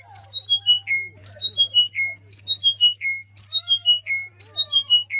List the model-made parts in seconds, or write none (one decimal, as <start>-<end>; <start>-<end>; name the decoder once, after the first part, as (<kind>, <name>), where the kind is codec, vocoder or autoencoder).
none